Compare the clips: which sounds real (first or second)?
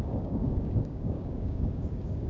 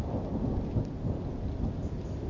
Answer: second